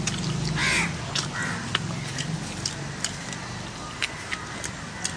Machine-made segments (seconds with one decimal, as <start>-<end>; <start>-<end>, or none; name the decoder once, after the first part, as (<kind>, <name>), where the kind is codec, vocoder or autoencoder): none

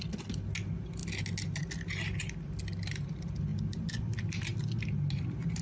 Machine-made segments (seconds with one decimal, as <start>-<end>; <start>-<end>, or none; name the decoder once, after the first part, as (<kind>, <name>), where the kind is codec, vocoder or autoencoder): none

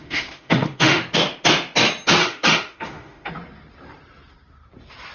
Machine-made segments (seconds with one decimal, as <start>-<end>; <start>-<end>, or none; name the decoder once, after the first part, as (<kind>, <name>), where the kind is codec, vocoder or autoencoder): 0.0-1.0 (autoencoder, DAC-VAE); 2.2-3.3

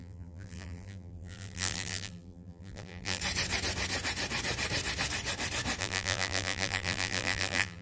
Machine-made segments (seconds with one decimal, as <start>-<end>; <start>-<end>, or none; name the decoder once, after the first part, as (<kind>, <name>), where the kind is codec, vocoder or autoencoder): 0.0-3.2 (vocoder, BigVGAN v2); 5.8-7.8

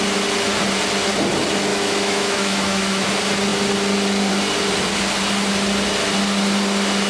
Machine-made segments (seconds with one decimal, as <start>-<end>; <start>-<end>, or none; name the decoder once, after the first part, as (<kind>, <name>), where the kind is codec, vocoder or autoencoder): 1.7-3.1 (autoencoder, DAC-VAE)

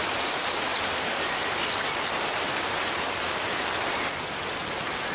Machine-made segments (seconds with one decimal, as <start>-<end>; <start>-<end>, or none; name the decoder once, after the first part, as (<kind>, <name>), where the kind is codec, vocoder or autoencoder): none

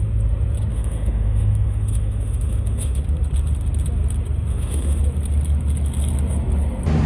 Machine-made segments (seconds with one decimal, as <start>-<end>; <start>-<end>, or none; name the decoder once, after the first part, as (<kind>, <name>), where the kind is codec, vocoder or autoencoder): 0.7-3.0 (autoencoder, DAC-VAE); 4.5-5.0